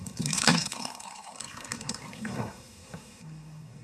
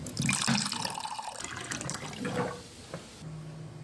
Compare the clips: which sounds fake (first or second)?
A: first